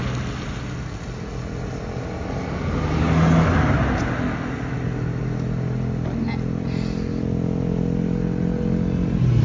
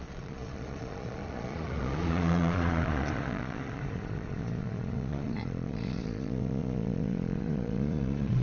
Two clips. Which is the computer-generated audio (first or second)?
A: second